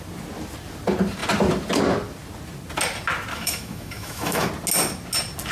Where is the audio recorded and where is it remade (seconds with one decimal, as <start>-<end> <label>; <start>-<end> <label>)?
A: 0.0-3.3 recorded; 3.3-4.5 remade; 4.5-5.5 recorded